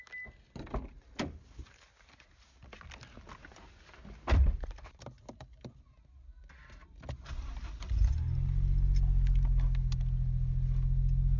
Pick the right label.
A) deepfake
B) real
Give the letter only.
B